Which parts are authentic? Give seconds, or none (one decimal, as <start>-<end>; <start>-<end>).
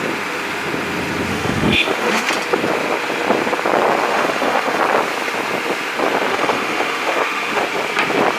0.0-1.3; 2.3-4.1; 4.8-6.3; 7.6-8.4